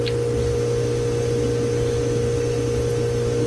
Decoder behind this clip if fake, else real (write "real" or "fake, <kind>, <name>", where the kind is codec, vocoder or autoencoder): real